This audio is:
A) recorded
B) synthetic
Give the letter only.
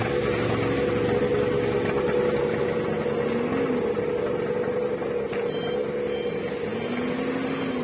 A